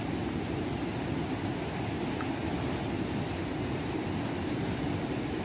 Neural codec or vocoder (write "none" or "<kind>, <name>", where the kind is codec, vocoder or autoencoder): none